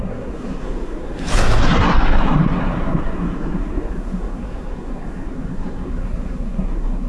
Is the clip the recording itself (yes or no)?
no